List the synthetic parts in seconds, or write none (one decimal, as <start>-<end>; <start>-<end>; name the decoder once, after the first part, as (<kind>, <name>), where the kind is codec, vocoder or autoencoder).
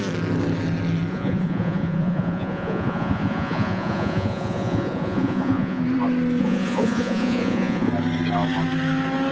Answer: 1.1-5.8 (vocoder, Vocos); 6.4-7.9